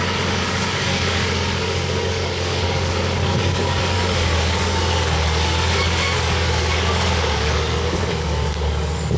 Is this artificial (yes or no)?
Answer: yes